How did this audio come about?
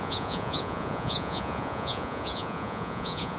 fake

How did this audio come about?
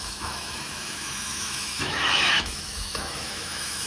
fake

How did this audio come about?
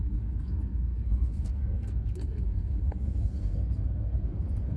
fake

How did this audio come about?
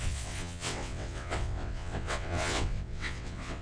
fake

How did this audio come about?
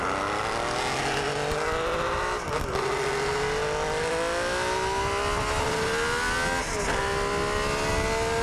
real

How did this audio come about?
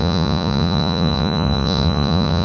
fake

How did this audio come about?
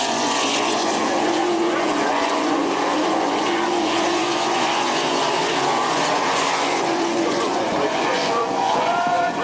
fake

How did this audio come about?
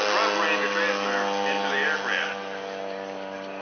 real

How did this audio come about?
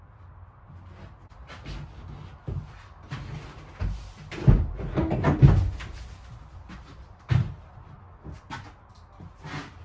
real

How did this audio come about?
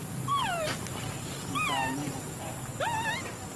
real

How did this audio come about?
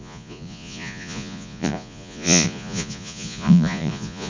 fake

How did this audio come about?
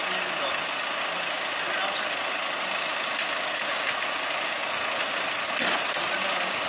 real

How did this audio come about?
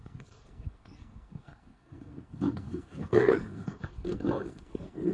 fake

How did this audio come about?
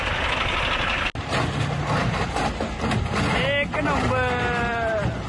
real